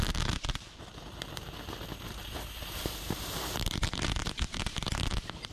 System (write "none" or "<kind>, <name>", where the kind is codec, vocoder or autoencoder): vocoder, BigVGAN v2